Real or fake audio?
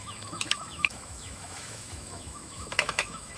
fake